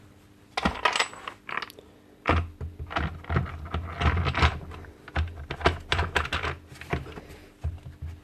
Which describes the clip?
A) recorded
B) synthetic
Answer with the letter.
A